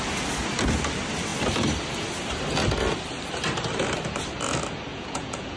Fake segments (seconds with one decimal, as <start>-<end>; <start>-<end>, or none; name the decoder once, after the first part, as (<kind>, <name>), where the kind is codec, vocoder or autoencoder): 4.9-5.6 (vocoder, Vocos)